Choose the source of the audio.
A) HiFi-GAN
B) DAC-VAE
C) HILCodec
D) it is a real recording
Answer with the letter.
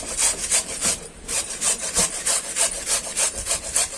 D